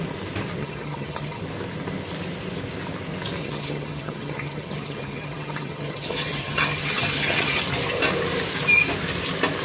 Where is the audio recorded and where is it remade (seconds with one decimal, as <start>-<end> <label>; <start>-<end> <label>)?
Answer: 0.0-0.6 recorded; 0.6-1.4 remade; 1.4-3.4 recorded; 3.4-7.6 remade; 7.6-9.6 recorded